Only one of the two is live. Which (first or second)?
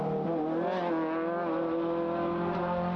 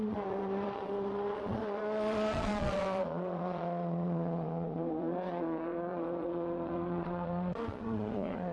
first